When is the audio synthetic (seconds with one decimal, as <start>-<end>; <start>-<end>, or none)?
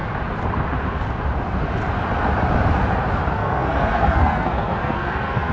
3.3-5.5